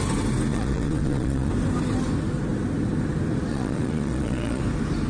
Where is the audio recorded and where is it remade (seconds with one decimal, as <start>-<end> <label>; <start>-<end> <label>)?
0.0-0.5 recorded; 0.5-1.5 remade; 1.5-3.5 recorded; 3.5-4.6 remade; 4.6-5.1 recorded